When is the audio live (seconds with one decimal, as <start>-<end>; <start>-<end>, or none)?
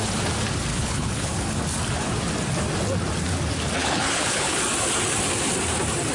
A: 0.0-0.7; 1.6-3.8; 4.6-6.1